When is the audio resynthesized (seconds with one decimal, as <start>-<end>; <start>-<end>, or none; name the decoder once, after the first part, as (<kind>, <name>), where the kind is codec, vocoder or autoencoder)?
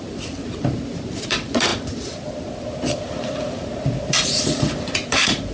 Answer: none